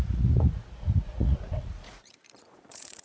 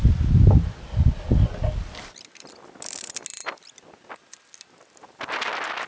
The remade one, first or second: first